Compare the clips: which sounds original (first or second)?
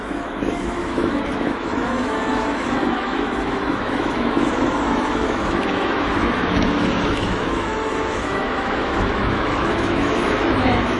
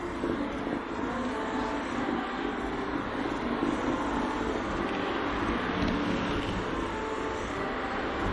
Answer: second